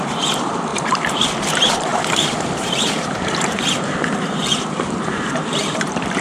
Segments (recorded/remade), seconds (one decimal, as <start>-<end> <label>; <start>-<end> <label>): 0.0-6.2 remade

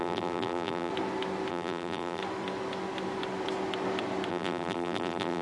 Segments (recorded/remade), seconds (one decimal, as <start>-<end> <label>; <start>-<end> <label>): 0.0-0.9 remade; 0.9-1.5 recorded; 1.5-2.2 remade; 2.2-4.3 recorded; 4.3-5.4 remade

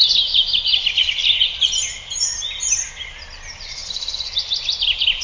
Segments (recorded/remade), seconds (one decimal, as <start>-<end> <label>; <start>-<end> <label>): 0.0-5.2 remade

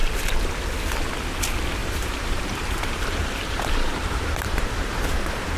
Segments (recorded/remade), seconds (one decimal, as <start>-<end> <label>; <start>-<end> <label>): 0.0-1.8 recorded; 1.8-4.9 remade; 4.9-5.6 recorded

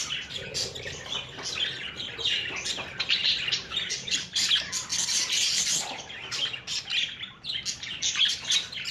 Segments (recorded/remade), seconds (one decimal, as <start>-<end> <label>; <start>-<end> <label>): 0.0-3.2 recorded; 3.2-4.5 remade; 4.5-4.9 recorded; 4.9-6.8 remade; 6.8-8.9 recorded

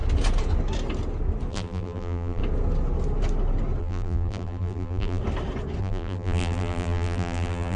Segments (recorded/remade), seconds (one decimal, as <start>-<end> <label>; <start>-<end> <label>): 0.0-1.5 recorded; 1.5-2.4 remade; 2.4-3.8 recorded; 3.8-5.2 remade; 5.2-5.8 recorded; 5.8-7.8 remade